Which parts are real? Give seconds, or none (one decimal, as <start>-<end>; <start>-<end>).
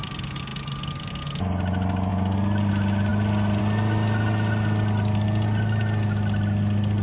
0.0-7.0